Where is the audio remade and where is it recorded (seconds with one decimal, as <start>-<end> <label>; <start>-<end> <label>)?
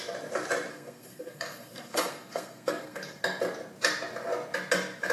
0.0-0.7 recorded; 0.7-3.2 remade; 3.2-5.1 recorded